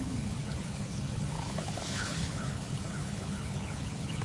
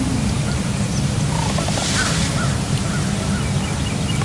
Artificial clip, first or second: first